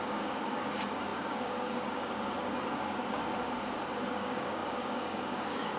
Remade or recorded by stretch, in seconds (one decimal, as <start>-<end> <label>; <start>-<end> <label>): 0.0-3.2 remade; 3.2-4.1 recorded; 4.1-5.8 remade